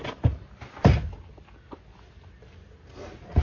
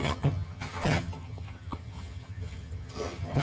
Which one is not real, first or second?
second